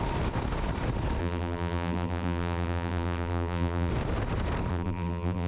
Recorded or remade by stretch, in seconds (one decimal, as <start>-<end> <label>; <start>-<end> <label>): 0.0-1.2 recorded; 1.2-3.9 remade; 3.9-4.7 recorded; 4.7-5.5 remade